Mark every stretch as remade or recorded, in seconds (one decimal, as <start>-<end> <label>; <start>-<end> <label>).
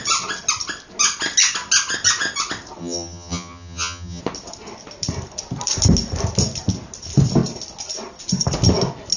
0.0-2.8 recorded; 2.8-4.2 remade; 4.2-9.2 recorded